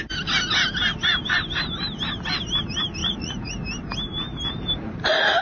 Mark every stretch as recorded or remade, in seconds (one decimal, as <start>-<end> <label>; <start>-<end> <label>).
0.0-3.0 recorded; 3.0-3.5 remade; 3.5-5.4 recorded